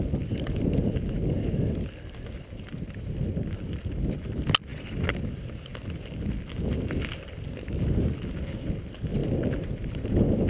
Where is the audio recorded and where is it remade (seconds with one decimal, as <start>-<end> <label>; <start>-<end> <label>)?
0.0-10.5 recorded